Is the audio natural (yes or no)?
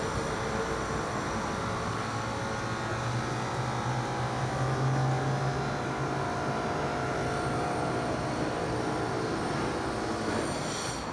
yes